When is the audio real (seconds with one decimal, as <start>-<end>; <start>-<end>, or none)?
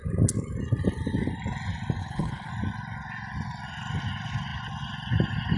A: 0.0-2.0; 2.5-5.6